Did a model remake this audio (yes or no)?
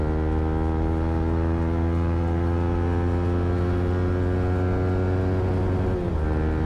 no